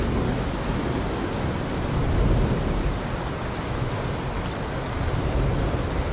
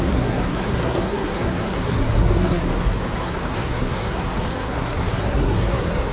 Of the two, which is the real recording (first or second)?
first